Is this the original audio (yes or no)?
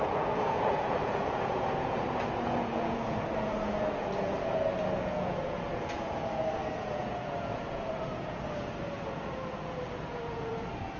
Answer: no